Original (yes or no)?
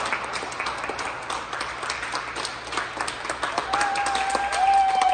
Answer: yes